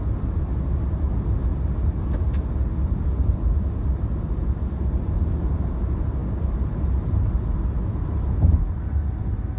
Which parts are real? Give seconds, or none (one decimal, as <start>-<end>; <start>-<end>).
0.0-9.6

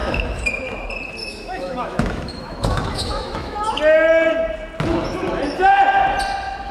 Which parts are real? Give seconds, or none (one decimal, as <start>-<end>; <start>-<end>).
0.5-1.2; 3.8-6.7

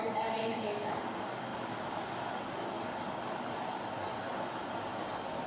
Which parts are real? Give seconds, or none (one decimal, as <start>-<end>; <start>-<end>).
0.0-0.4; 1.0-5.5

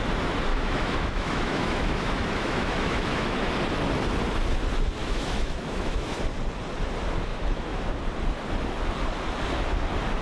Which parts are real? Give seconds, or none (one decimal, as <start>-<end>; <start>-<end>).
0.0-0.5; 3.5-5.0; 6.2-7.3; 7.9-10.2

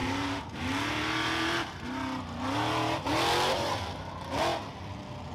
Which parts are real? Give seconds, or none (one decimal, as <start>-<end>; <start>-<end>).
0.0-5.3